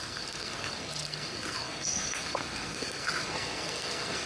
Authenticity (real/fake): fake